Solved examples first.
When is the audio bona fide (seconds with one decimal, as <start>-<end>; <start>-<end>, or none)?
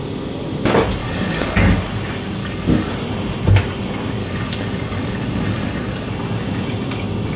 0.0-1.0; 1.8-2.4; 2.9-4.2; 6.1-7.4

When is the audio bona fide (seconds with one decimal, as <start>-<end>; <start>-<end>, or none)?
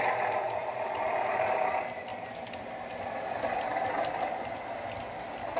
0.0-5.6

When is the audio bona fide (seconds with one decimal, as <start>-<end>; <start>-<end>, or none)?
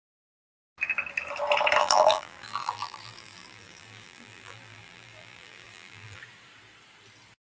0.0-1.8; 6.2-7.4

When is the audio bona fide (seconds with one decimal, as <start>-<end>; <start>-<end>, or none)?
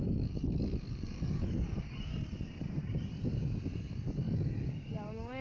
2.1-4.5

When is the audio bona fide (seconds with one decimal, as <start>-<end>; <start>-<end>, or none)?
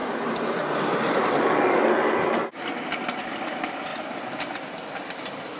1.3-3.9; 4.4-5.6